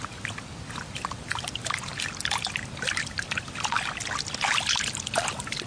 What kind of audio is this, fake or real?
real